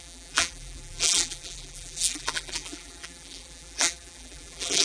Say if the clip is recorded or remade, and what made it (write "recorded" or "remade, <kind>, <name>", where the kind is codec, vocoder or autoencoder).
remade, vocoder, BigVGAN v2